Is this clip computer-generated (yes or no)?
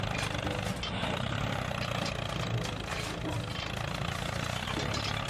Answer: no